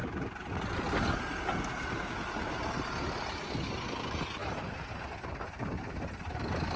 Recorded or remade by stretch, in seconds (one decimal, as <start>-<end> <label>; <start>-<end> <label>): 0.0-4.4 recorded; 4.4-4.9 remade; 4.9-6.8 recorded

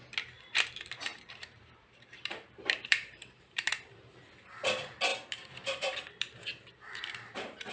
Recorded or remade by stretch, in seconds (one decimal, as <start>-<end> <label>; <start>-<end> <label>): 0.0-1.1 recorded; 1.1-3.7 remade; 3.7-5.1 recorded; 5.1-7.7 remade

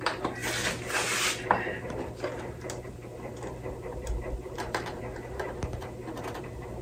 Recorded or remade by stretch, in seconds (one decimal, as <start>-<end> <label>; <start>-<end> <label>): 0.0-0.4 remade; 0.4-1.7 recorded; 1.7-6.8 remade

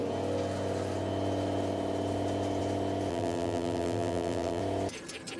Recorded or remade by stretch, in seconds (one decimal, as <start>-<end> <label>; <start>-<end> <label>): 0.0-3.1 recorded; 3.1-4.6 remade; 4.6-5.4 recorded